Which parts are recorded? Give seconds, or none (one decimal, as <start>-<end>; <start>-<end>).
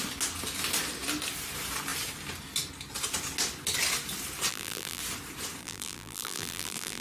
0.0-4.5; 5.0-5.6